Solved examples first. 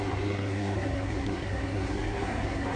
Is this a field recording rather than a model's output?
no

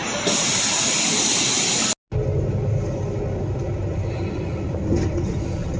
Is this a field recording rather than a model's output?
yes